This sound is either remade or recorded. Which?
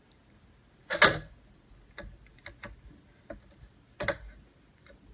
recorded